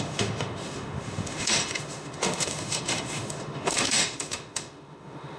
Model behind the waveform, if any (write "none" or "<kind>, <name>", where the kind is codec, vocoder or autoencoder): autoencoder, DAC-VAE